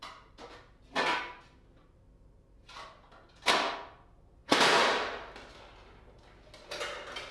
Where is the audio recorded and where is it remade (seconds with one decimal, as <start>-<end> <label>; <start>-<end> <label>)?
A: 0.0-7.3 recorded